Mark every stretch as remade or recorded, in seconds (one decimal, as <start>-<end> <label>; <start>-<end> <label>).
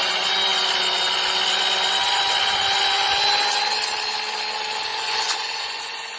0.0-4.9 recorded; 4.9-6.2 remade